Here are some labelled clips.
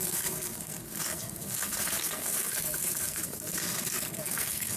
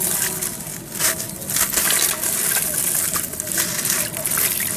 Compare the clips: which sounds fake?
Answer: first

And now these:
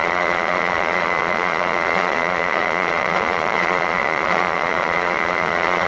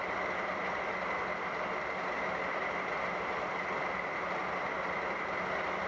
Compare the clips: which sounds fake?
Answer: first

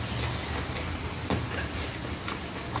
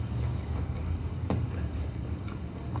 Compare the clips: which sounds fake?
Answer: second